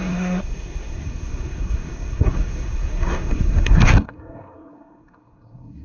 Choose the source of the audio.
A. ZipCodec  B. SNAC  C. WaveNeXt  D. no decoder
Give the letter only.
B